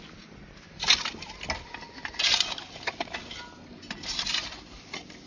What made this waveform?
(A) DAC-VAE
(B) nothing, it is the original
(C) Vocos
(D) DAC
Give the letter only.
B